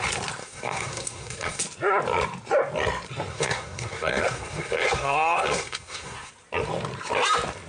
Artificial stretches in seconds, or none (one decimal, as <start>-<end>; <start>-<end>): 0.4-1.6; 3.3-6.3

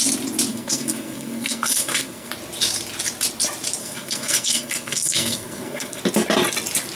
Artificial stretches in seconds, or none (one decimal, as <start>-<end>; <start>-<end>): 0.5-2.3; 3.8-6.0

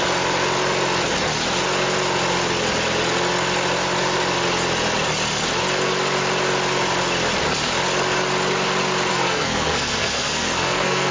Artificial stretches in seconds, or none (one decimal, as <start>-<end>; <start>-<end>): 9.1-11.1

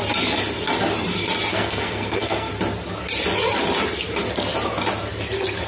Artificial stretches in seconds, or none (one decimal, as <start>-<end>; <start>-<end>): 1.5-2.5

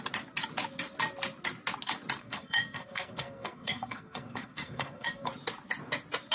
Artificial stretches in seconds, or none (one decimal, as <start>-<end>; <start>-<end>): 2.2-5.3

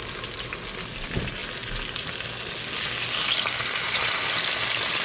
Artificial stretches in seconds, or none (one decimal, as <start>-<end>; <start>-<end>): none